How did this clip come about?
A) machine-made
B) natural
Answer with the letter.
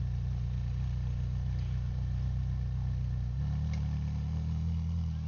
B